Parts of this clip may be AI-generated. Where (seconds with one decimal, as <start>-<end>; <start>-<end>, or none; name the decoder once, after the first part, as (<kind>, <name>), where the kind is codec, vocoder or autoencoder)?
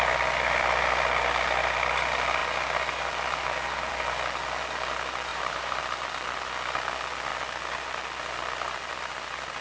5.3-5.8 (vocoder, BigVGAN v2)